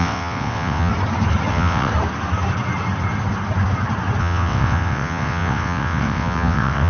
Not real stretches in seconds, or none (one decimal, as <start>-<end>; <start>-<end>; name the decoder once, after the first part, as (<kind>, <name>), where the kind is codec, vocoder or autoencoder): 0.0-0.9 (vocoder, WaveNeXt); 1.5-1.9; 4.2-6.9